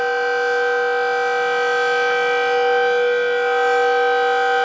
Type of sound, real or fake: real